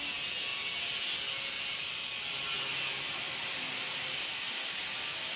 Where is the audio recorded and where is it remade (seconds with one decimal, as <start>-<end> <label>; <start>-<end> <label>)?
0.0-5.4 recorded